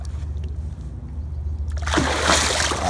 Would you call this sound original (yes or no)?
yes